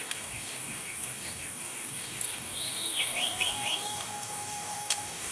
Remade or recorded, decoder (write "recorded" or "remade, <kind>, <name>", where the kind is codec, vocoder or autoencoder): remade, codec, DAC